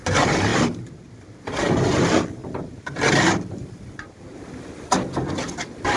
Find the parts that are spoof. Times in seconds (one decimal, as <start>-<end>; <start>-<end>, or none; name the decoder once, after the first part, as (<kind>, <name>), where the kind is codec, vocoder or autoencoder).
none